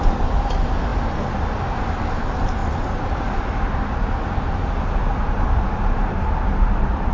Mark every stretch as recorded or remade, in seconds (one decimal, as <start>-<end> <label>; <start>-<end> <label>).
0.0-7.1 recorded